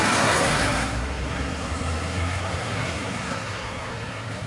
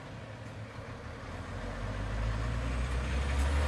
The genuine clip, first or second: second